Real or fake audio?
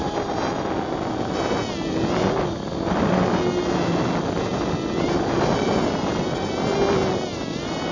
real